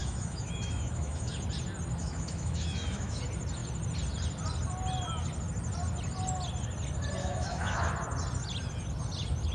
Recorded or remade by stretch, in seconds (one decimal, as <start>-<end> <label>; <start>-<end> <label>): 0.0-1.3 remade; 1.3-2.0 recorded; 2.0-3.2 remade; 3.2-7.2 recorded; 7.2-7.9 remade; 7.9-9.5 recorded